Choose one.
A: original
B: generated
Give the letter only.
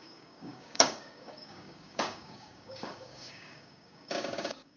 B